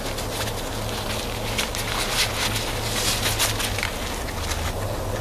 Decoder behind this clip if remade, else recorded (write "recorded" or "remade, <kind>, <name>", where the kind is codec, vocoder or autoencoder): recorded